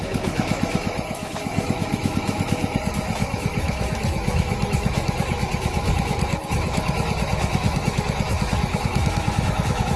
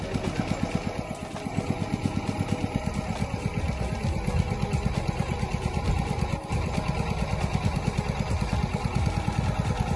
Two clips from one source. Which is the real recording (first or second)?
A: second